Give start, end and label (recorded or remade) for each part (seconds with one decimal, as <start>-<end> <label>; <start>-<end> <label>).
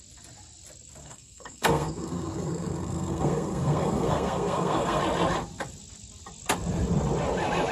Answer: 0.0-1.0 recorded; 1.0-5.0 remade; 5.0-7.7 recorded